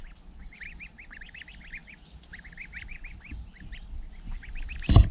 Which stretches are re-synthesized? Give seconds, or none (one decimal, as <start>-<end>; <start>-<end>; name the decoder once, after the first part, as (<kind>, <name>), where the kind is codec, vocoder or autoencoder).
none